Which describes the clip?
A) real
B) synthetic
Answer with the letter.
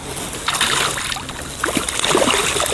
A